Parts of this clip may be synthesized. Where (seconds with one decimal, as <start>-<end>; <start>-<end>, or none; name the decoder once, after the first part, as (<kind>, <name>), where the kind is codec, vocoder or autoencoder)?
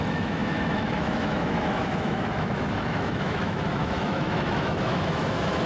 0.0-5.7 (autoencoder, DAC-VAE)